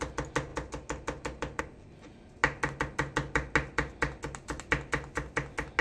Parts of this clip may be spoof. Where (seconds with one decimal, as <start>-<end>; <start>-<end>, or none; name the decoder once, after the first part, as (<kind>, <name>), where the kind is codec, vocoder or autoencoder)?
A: none